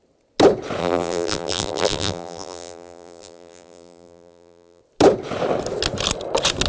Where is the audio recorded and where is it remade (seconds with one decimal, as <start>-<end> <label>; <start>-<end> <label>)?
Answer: 0.0-0.8 recorded; 0.8-4.8 remade; 4.8-6.7 recorded